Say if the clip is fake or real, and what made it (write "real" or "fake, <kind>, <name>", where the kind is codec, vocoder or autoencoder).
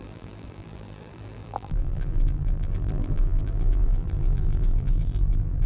fake, vocoder, BigVGAN v2